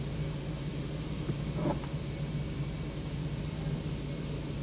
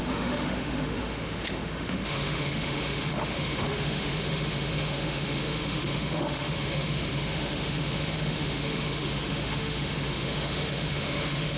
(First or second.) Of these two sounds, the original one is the first